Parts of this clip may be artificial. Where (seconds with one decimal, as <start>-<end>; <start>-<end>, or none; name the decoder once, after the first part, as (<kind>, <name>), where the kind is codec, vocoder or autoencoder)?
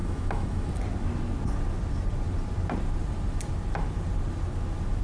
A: 0.0-0.7 (autoencoder, DAC-VAE)